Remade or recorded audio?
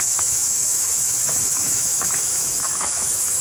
remade